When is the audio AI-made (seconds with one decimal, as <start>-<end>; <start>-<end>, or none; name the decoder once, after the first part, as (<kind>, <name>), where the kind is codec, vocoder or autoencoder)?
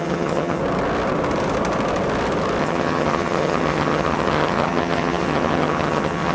0.0-0.6 (vocoder, HiFi-GAN); 2.6-6.3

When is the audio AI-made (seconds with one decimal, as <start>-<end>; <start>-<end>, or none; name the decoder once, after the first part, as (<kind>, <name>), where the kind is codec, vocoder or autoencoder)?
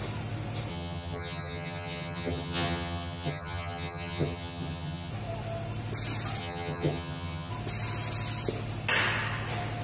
0.7-5.1 (vocoder, HiFi-GAN); 6.4-7.5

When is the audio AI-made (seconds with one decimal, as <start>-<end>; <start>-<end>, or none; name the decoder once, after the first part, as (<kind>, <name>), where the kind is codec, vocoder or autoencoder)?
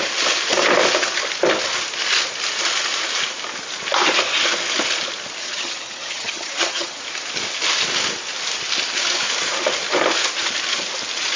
5.4-7.0 (vocoder, HiFi-GAN)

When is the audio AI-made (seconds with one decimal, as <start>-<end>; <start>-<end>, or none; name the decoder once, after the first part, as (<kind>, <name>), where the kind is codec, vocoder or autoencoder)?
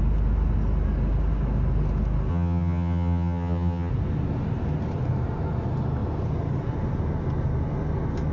2.3-3.9 (vocoder, HiFi-GAN)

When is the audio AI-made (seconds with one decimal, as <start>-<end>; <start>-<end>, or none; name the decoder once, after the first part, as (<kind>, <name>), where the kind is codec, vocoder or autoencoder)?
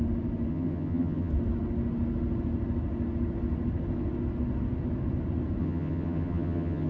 0.5-1.3 (vocoder, HiFi-GAN); 5.6-6.9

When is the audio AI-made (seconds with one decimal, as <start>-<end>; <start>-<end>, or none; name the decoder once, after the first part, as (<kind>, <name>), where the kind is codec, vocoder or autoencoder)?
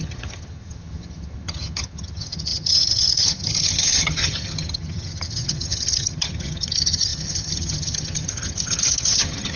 0.0-9.6 (vocoder, HiFi-GAN)